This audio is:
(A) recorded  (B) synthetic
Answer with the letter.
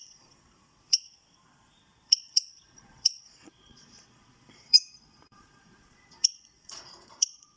B